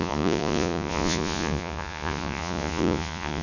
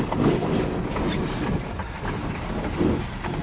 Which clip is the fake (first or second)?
first